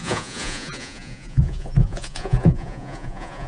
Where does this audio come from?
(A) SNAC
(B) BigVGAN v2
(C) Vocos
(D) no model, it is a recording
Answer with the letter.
C